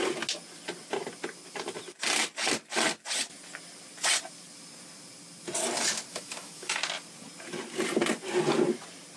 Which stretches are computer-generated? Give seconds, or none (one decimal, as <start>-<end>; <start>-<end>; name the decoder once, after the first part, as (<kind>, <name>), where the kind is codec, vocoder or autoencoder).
6.1-6.8 (autoencoder, DAC-VAE)